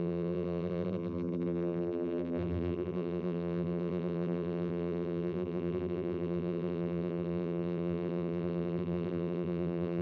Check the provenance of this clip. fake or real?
fake